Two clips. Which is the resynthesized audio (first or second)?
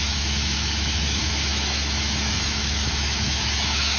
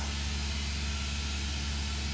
first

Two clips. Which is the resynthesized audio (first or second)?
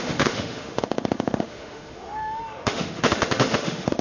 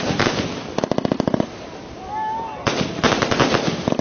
first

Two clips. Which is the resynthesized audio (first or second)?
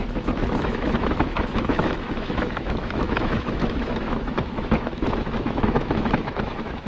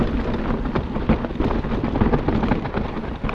first